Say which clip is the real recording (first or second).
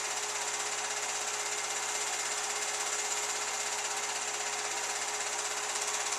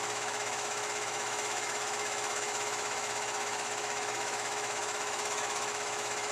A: first